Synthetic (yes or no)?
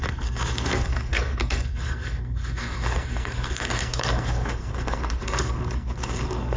yes